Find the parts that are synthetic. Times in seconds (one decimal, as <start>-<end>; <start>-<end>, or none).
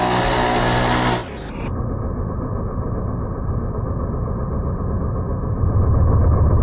none